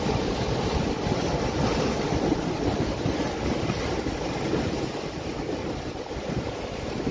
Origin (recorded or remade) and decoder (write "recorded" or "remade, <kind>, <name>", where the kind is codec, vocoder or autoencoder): recorded